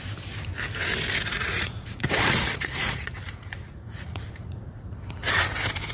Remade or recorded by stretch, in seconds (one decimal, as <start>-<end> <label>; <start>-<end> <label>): 0.0-1.3 recorded; 1.3-4.8 remade; 4.8-5.9 recorded